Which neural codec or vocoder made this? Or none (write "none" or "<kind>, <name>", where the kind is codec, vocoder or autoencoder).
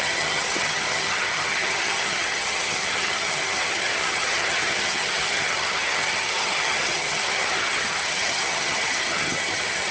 vocoder, HiFi-GAN